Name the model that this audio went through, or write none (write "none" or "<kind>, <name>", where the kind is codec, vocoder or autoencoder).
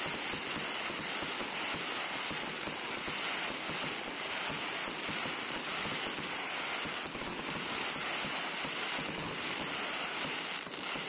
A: none